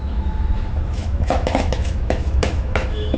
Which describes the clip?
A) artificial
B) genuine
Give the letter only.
A